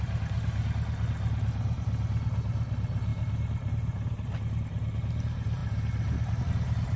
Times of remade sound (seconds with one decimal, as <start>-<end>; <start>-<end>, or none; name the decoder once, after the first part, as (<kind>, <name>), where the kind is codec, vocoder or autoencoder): none